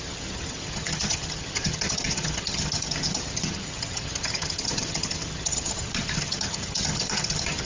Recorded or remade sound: remade